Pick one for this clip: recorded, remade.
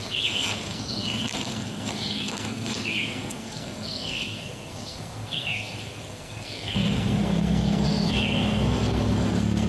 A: remade